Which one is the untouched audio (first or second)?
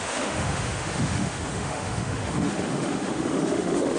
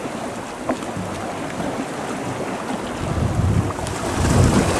second